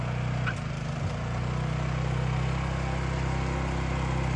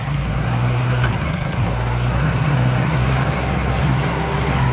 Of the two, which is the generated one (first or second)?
second